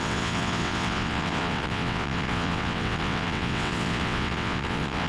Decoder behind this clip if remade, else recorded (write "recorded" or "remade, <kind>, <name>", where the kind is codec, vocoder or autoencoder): remade, vocoder, WaveNeXt